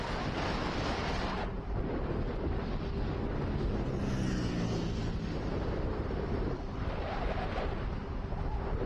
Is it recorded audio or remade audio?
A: recorded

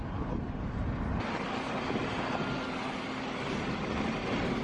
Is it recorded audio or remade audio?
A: recorded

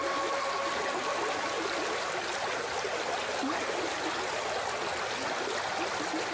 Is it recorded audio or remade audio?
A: recorded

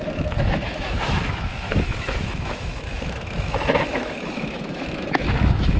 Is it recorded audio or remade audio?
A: remade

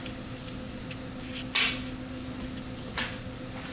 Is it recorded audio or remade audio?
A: recorded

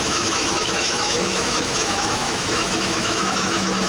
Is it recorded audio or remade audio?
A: remade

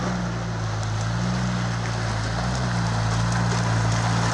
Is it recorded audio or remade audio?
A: recorded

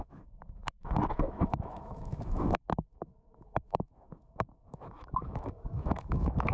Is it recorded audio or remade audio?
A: remade